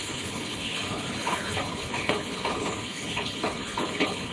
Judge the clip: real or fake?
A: fake